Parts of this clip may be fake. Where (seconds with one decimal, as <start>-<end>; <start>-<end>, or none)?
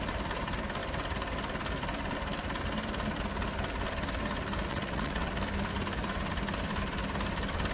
4.7-5.3